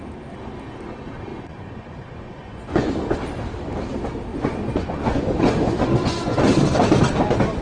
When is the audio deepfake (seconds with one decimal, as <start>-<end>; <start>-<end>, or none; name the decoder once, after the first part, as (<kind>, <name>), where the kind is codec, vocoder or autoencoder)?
1.3-2.9 (vocoder, Vocos); 4.3-6.5